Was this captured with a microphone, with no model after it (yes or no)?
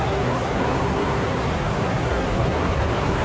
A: no